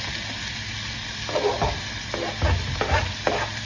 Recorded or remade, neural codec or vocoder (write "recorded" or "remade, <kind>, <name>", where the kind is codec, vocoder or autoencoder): recorded